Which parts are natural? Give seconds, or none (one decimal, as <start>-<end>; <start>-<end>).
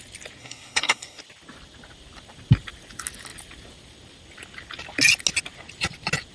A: 0.0-0.4; 1.2-6.3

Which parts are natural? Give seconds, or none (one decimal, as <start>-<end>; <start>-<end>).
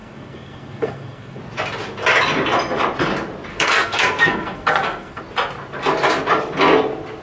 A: 1.4-3.5; 5.2-7.2